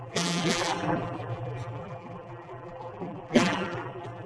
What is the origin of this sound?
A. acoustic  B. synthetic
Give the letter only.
B